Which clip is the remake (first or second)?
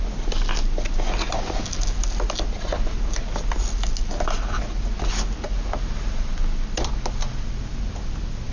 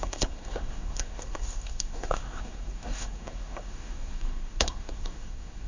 second